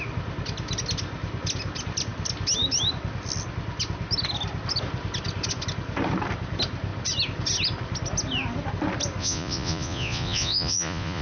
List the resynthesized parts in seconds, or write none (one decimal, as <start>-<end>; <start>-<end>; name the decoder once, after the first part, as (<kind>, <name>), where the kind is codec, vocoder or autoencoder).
9.2-11.2 (vocoder, Vocos)